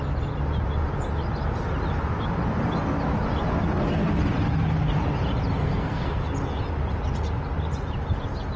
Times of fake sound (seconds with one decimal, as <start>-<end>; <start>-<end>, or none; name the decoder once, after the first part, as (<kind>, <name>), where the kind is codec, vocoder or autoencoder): 5.6-6.2 (codec, SNAC)